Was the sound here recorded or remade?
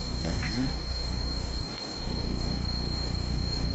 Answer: remade